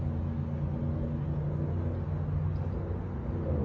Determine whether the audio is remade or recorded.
recorded